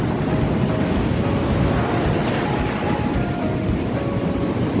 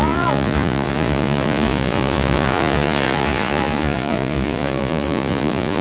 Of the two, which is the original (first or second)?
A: first